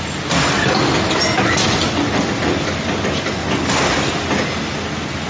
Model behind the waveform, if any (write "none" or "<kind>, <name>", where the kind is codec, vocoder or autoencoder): none